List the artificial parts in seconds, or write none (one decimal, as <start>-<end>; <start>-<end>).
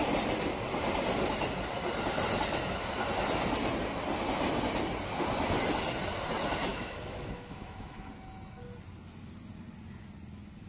6.7-8.1